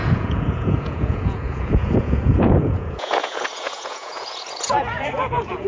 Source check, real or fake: fake